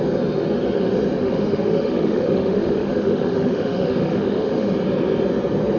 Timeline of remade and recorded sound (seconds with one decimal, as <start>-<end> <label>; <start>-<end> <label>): 0.0-1.2 recorded; 1.2-4.7 remade; 4.7-5.8 recorded